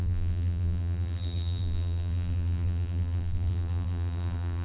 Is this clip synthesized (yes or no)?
yes